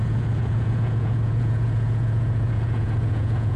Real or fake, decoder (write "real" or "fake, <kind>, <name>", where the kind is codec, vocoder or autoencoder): fake, vocoder, Vocos